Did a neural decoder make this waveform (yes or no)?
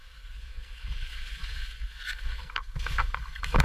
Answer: yes